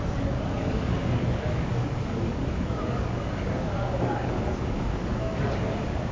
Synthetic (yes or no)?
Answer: yes